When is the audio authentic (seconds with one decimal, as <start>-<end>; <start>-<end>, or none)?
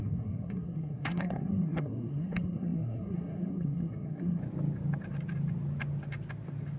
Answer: 4.4-6.8